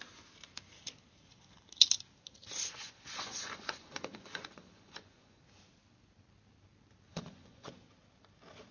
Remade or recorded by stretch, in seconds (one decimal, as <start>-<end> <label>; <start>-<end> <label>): 0.0-2.8 recorded; 2.8-5.4 remade; 5.4-7.1 recorded; 7.1-7.7 remade; 7.7-8.7 recorded